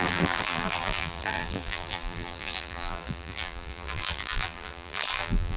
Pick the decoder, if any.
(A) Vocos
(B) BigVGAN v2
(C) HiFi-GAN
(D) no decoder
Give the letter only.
B